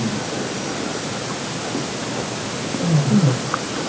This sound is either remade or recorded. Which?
recorded